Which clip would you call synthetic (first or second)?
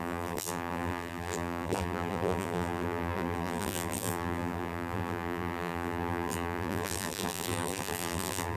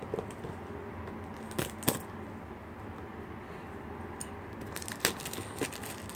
first